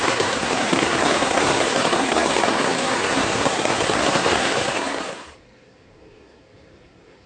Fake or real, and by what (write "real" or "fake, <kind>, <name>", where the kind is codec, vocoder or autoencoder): fake, codec, SNAC